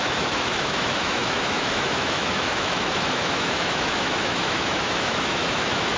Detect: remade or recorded remade